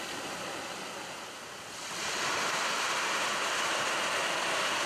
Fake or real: real